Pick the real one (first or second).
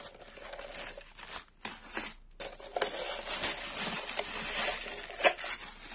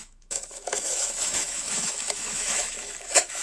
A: first